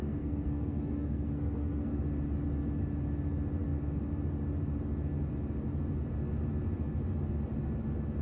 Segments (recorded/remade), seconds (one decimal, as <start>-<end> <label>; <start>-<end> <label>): 0.0-2.0 remade; 2.0-8.2 recorded